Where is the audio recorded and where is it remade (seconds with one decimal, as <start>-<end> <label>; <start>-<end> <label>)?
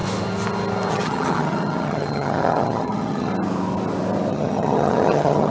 0.0-0.9 recorded; 0.9-3.3 remade; 3.3-4.3 recorded; 4.3-5.5 remade